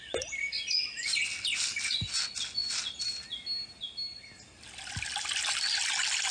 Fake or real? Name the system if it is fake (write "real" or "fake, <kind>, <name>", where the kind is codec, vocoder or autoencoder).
real